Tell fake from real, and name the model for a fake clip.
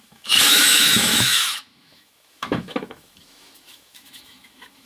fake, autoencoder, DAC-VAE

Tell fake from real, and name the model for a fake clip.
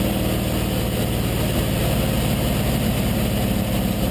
real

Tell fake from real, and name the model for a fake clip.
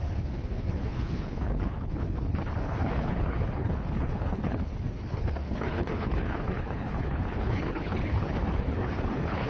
fake, codec, HILCodec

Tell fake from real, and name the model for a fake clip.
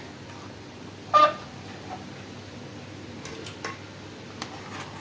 real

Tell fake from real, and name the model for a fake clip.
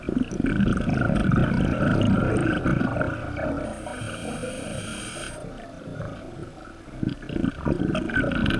real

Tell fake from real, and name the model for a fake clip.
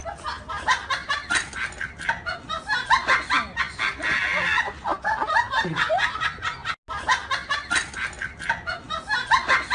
real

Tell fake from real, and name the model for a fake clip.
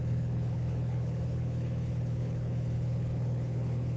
fake, codec, HILCodec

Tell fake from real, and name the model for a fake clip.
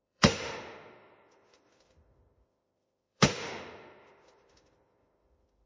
fake, autoencoder, DAC-VAE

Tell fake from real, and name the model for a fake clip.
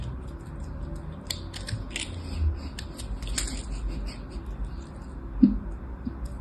real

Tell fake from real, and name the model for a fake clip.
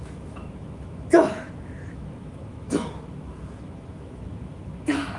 fake, autoencoder, DAC-VAE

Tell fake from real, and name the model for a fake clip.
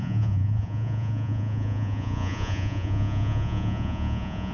fake, vocoder, Vocos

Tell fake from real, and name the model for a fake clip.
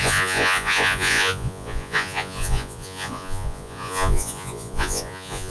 fake, vocoder, Vocos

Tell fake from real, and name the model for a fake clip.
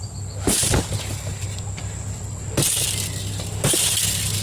real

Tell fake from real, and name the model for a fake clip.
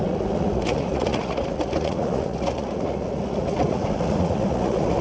fake, vocoder, Vocos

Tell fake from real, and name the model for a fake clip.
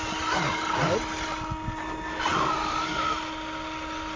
real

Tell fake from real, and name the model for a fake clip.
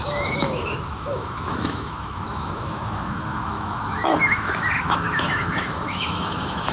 fake, autoencoder, DAC-VAE